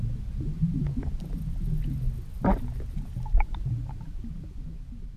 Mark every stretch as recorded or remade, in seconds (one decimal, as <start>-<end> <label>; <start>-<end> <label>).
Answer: 0.0-0.6 remade; 0.6-3.7 recorded; 3.7-5.2 remade